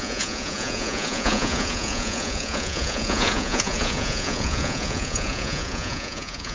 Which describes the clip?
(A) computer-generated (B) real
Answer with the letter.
A